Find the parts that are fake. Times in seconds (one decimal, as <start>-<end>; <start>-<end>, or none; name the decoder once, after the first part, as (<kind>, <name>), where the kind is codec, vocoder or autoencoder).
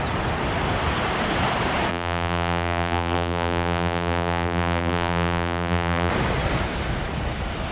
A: 1.9-6.1 (vocoder, BigVGAN v2)